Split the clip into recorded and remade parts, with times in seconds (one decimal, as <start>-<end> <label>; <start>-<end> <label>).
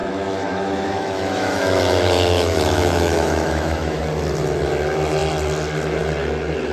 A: 0.0-4.0 remade; 4.0-6.7 recorded